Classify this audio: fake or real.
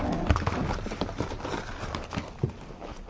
fake